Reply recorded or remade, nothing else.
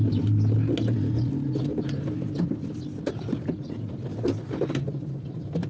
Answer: recorded